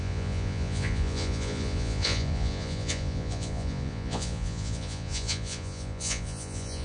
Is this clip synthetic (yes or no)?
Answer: yes